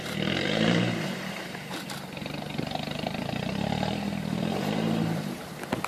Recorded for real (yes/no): no